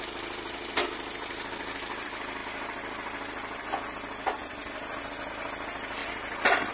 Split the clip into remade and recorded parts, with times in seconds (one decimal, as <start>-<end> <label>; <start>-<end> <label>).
0.0-6.7 recorded